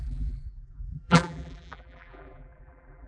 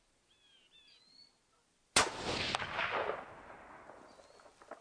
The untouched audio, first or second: second